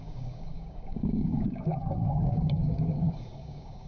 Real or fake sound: fake